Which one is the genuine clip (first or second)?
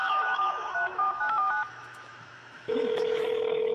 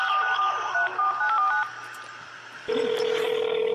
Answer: second